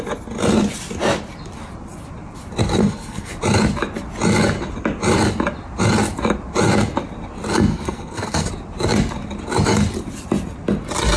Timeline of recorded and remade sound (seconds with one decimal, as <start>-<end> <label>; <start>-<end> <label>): 0.0-2.8 recorded; 2.8-3.3 remade; 3.3-7.7 recorded; 7.7-8.5 remade; 8.5-11.2 recorded